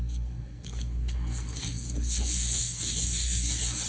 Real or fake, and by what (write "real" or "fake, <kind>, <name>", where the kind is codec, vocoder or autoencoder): fake, codec, SNAC